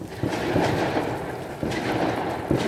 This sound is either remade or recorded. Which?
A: recorded